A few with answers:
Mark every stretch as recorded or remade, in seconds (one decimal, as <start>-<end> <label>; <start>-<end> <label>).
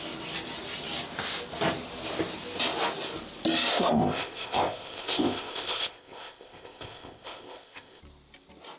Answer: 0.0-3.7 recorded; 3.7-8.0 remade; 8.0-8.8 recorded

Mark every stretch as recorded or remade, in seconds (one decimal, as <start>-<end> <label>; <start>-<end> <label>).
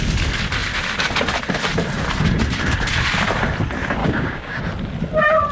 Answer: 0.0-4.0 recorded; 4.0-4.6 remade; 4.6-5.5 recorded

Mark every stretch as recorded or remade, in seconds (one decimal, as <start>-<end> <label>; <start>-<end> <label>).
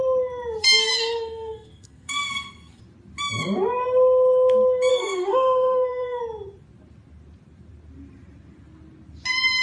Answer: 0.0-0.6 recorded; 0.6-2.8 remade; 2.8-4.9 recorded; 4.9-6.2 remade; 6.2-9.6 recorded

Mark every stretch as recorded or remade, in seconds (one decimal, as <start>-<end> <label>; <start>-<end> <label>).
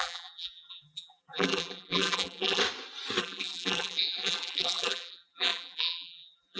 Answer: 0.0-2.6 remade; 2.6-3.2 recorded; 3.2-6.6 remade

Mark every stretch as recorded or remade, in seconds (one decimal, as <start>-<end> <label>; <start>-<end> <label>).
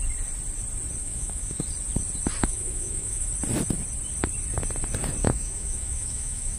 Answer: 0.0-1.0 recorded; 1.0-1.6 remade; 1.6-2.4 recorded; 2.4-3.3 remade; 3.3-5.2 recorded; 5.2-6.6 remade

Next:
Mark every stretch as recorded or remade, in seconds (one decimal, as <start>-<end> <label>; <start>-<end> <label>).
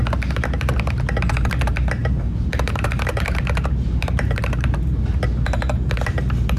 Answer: 0.0-6.6 remade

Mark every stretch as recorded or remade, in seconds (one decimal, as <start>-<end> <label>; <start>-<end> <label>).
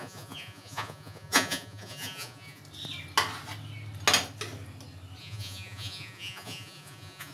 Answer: 0.0-2.6 remade; 2.6-5.2 recorded; 5.2-7.3 remade